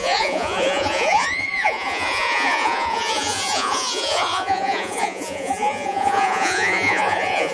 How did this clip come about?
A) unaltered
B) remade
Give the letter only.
B